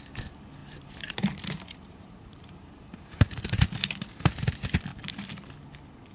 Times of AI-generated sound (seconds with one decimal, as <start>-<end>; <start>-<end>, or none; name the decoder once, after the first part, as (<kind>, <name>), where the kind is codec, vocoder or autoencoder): 0.6-4.3 (vocoder, BigVGAN v2); 4.9-5.5